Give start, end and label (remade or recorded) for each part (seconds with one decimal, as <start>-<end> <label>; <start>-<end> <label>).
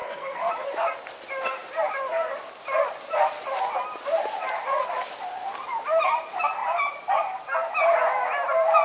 0.0-0.5 remade; 0.5-8.8 recorded